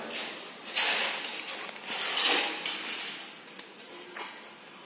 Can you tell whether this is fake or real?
real